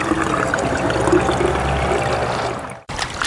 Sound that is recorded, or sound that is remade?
remade